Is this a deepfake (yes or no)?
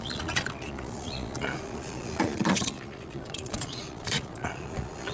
yes